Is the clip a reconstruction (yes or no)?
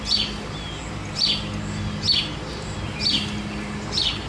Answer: no